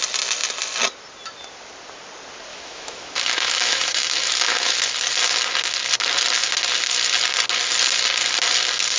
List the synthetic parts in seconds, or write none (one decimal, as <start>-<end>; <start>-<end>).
2.5-4.8